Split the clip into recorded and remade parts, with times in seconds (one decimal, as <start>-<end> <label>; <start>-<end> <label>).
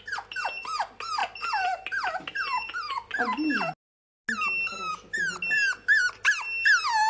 0.0-7.1 recorded